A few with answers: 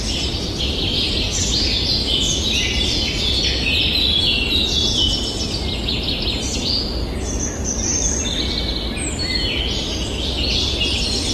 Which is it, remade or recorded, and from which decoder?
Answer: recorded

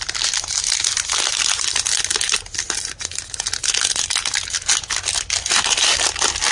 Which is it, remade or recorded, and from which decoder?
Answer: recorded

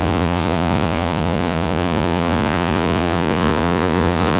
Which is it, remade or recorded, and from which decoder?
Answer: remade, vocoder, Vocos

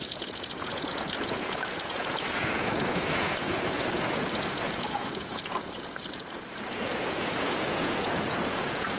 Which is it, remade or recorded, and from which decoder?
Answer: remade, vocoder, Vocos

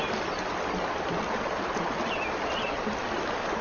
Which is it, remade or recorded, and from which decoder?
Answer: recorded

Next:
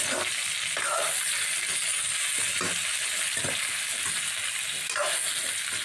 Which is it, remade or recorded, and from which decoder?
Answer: recorded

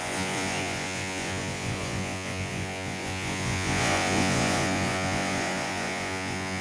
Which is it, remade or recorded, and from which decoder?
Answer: remade, vocoder, Vocos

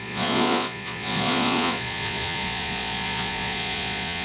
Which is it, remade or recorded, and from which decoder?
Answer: remade, vocoder, Vocos